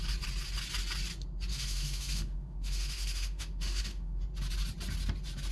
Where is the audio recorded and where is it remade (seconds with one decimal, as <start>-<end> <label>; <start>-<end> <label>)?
0.0-1.5 recorded; 1.5-4.2 remade; 4.2-5.5 recorded